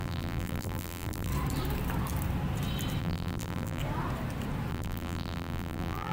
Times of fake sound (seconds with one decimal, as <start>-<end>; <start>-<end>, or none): 0.0-1.3; 3.0-3.8; 4.7-6.1

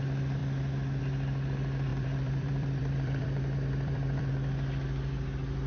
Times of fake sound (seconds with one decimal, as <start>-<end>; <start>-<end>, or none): 1.9-4.3

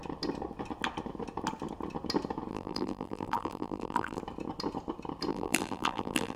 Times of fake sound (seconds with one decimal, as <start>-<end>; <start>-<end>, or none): 2.5-4.2; 5.3-6.4

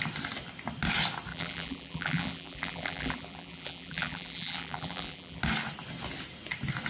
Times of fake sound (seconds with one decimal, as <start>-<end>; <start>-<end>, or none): 1.3-5.4